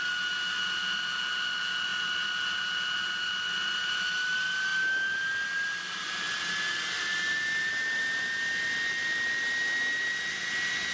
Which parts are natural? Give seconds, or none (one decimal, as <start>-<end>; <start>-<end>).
0.0-10.9